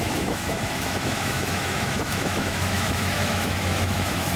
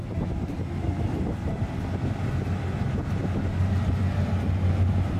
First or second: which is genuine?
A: second